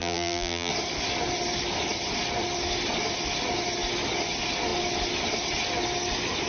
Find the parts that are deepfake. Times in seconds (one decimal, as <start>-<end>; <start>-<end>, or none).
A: 0.0-0.7